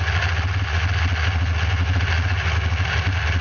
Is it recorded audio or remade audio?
recorded